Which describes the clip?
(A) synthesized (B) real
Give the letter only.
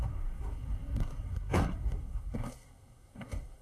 A